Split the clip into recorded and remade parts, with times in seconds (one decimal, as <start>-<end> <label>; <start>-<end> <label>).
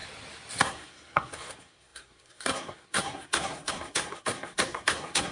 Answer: 0.0-0.6 recorded; 0.6-5.3 remade